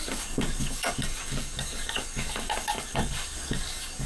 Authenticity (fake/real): fake